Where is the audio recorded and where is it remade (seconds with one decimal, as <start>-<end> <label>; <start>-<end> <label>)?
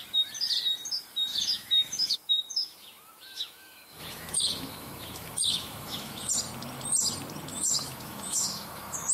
0.0-1.3 recorded; 1.3-6.3 remade; 6.3-7.5 recorded; 7.5-9.1 remade